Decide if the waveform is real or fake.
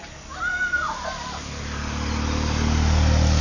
real